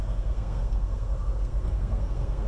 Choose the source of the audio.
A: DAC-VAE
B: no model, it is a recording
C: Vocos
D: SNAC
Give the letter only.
D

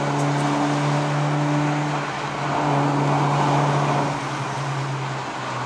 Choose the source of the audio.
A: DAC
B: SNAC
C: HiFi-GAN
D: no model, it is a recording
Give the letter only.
D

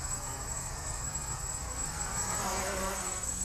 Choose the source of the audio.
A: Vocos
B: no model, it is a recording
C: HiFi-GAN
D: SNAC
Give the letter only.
D